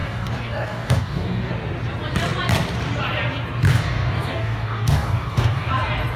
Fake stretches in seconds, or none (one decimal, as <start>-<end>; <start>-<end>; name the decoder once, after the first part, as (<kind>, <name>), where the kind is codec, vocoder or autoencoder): 0.0-1.5 (codec, DAC); 3.7-5.7